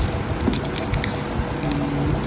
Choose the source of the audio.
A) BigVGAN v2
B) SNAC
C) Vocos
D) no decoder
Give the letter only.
D